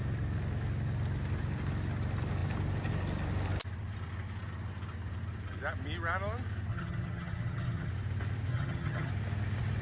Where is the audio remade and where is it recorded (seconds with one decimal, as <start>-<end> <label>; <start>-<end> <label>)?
0.0-6.7 recorded; 6.7-7.9 remade; 7.9-8.5 recorded; 8.5-9.1 remade; 9.1-9.8 recorded